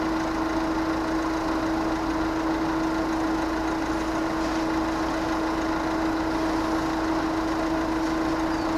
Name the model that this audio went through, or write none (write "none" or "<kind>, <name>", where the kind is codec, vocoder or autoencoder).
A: none